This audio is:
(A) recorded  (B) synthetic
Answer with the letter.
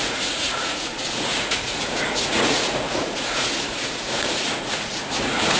B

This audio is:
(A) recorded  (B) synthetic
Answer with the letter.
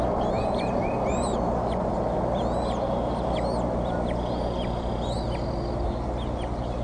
A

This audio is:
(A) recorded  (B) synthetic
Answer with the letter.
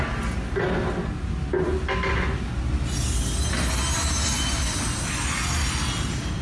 A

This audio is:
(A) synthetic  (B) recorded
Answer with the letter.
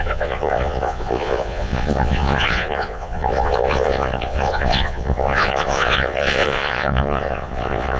A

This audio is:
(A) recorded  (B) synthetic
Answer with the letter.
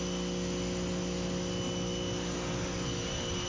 A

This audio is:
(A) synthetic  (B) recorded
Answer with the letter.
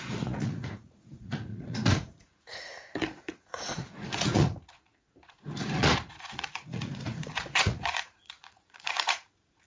A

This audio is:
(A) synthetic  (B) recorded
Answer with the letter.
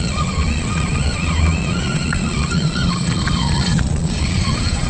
A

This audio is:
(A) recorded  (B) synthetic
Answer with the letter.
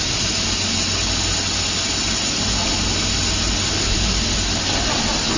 A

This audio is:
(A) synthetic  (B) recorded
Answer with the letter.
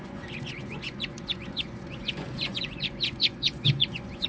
A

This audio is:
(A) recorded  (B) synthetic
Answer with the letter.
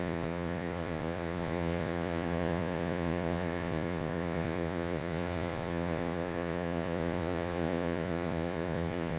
B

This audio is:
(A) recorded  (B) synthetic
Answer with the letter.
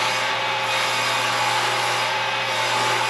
A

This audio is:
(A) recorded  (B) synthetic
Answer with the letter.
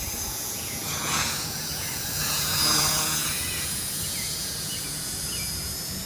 B